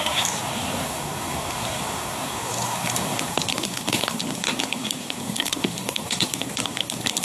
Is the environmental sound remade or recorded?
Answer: remade